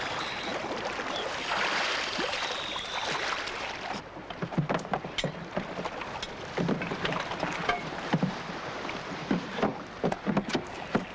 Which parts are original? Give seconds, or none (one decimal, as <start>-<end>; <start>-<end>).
9.7-10.6